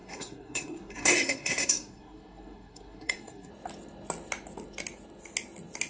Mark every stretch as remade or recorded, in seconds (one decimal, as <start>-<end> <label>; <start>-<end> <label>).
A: 0.0-3.5 remade; 3.5-5.9 recorded